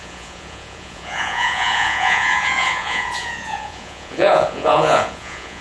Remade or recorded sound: remade